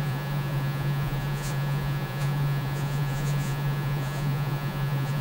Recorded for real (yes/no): no